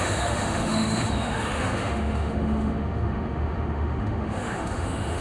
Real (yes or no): no